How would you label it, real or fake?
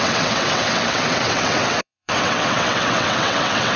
fake